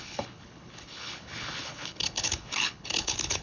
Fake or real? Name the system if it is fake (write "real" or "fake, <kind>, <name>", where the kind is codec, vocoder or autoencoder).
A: fake, codec, HILCodec